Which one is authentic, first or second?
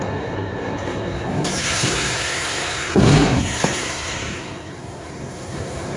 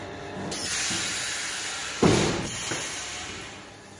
second